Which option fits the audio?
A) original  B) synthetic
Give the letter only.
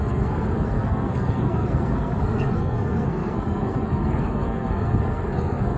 B